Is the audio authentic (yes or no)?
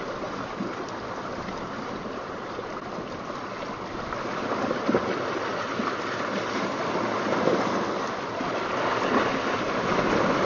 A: yes